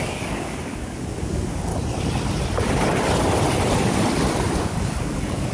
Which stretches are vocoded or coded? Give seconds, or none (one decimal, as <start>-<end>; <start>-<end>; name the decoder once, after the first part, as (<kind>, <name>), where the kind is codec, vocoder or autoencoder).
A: 0.0-1.7 (codec, DAC); 4.6-5.5